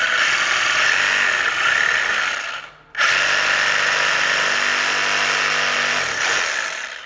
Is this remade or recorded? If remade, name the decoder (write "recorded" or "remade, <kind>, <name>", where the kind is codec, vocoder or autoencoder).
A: recorded